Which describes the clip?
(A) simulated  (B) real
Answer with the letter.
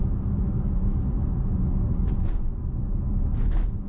B